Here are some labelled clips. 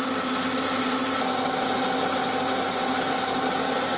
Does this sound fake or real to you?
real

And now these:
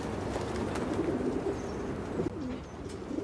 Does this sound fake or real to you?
real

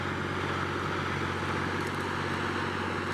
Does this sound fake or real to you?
real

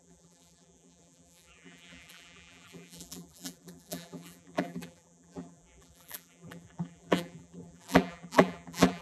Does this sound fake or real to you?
fake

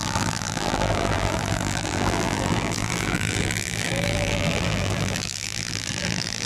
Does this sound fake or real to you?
fake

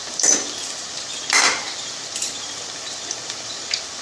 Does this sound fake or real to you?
fake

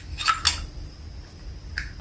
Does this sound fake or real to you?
real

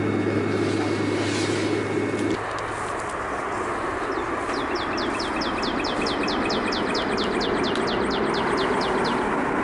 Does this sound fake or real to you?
real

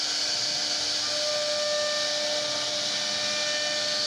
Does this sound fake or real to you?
real